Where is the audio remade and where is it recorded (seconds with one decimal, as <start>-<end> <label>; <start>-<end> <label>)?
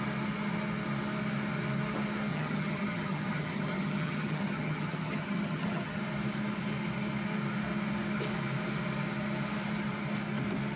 0.0-2.3 recorded; 2.3-6.0 remade; 6.0-10.8 recorded